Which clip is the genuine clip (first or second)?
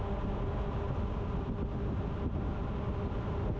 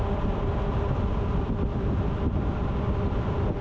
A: first